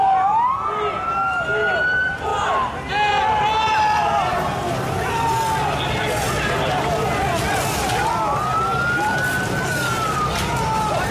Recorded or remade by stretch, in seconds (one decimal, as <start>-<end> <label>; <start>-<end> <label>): 0.0-11.1 recorded